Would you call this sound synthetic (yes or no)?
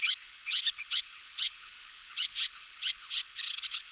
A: yes